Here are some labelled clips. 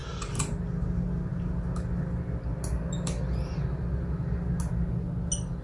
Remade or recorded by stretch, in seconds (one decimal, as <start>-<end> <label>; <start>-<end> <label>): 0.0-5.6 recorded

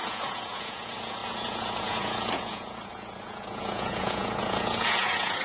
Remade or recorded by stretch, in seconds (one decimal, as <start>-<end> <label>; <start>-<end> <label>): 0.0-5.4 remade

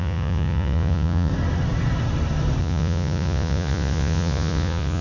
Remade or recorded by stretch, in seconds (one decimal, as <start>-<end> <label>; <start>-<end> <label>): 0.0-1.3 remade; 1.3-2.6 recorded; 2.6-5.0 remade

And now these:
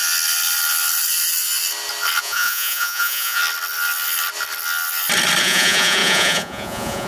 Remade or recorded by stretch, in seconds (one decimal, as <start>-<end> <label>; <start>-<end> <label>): 0.0-2.2 recorded; 2.2-3.4 remade; 3.4-5.4 recorded; 5.4-7.1 remade

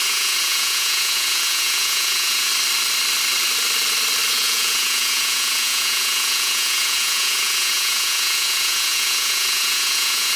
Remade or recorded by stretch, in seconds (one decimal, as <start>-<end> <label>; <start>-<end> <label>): 0.0-2.5 remade; 2.5-4.3 recorded; 4.3-10.4 remade

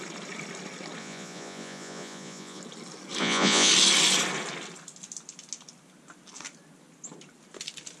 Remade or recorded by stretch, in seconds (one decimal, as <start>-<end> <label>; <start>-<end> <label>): 0.0-1.0 recorded; 1.0-2.6 remade; 2.6-3.2 recorded; 3.2-3.7 remade; 3.7-8.0 recorded